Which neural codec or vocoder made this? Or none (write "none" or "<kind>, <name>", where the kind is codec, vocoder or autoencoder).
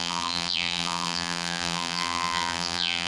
vocoder, BigVGAN v2